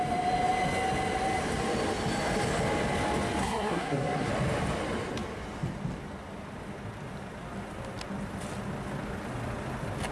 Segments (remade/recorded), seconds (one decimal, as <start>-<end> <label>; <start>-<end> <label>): 0.0-3.4 recorded; 3.4-4.3 remade; 4.3-10.1 recorded